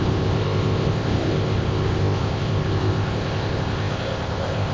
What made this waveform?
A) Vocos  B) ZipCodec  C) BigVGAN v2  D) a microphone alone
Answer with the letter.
B